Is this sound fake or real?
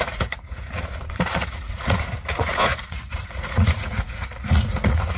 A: fake